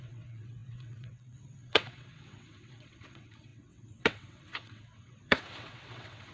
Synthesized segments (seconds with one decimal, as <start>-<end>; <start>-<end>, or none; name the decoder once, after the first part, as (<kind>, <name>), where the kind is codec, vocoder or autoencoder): 0.0-6.3 (vocoder, WaveNeXt)